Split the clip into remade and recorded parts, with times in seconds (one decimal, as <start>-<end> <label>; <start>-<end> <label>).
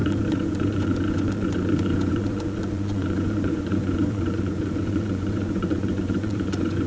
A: 0.0-6.9 remade